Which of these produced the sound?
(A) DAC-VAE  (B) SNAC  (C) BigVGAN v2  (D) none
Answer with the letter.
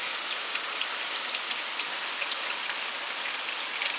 D